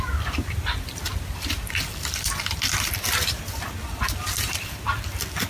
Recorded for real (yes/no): yes